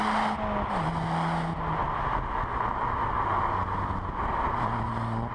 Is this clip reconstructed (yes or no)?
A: no